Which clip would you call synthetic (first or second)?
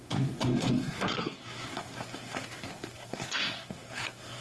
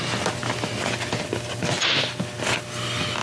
first